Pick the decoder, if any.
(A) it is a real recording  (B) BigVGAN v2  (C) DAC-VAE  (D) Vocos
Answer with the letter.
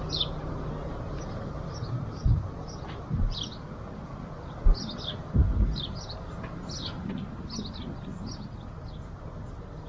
A